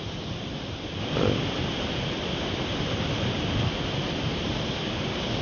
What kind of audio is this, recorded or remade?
remade